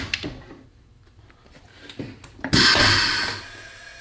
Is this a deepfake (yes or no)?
no